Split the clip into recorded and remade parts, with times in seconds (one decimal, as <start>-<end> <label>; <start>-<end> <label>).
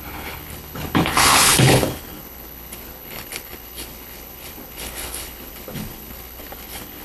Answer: 0.0-7.0 remade